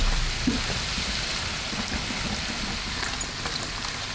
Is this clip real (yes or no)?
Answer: yes